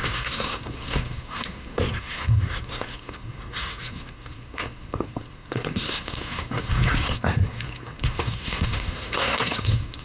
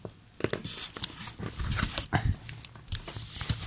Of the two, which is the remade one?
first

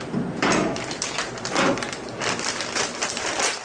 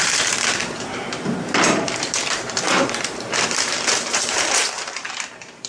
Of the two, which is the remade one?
second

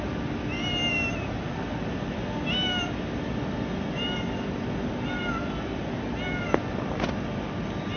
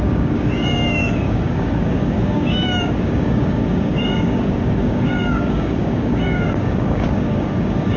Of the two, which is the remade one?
second